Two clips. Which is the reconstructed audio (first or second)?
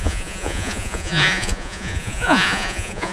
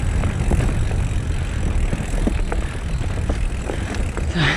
first